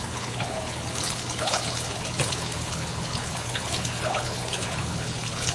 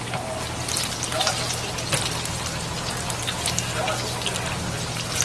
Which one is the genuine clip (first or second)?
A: second